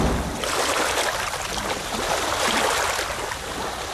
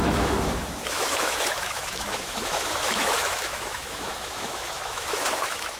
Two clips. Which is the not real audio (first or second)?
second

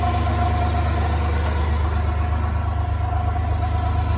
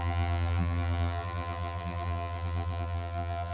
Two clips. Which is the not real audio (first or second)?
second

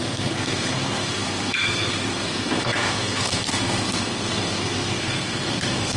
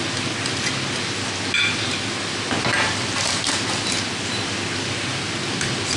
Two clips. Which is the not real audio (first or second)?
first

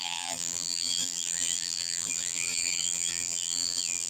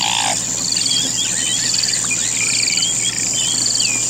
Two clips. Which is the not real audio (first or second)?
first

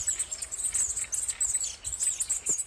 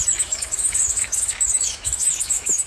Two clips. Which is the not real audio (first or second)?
second